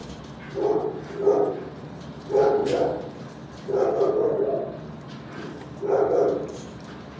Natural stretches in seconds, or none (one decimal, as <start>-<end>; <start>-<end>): 0.0-7.2

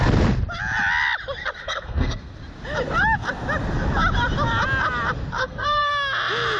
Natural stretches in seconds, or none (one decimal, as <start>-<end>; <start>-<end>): 0.0-1.6; 2.3-5.4; 5.9-6.6